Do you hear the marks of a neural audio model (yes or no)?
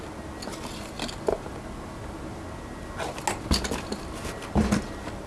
no